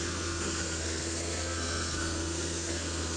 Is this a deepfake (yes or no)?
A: yes